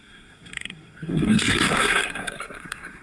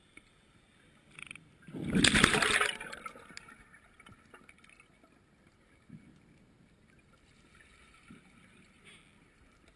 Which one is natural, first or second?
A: second